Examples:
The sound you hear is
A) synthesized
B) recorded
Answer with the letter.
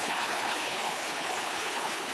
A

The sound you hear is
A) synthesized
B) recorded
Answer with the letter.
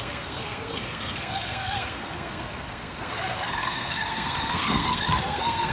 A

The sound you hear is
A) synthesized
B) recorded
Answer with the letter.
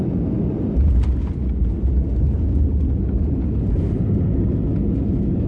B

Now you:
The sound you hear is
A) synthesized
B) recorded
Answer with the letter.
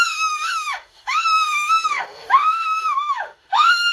A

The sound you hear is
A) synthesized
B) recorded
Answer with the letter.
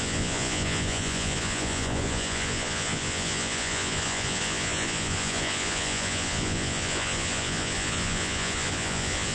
A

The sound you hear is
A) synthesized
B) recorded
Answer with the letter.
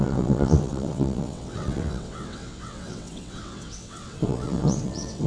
A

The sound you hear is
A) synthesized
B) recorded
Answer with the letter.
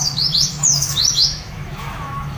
A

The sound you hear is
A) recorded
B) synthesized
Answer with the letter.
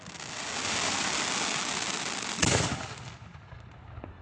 A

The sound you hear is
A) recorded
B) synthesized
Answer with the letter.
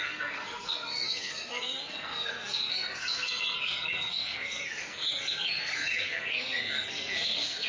B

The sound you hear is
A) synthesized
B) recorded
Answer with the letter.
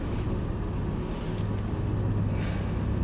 B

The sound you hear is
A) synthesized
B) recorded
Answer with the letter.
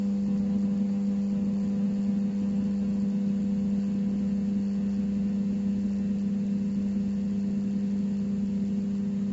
B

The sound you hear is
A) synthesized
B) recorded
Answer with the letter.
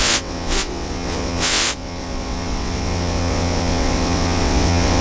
A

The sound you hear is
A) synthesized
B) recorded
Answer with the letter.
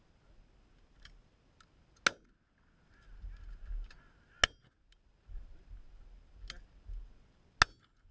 B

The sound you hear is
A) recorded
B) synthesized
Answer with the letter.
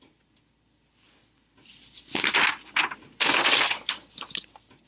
A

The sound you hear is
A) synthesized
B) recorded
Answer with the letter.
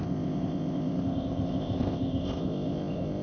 A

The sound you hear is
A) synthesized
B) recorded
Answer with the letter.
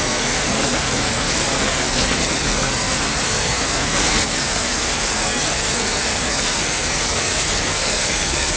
A